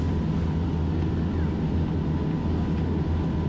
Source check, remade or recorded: recorded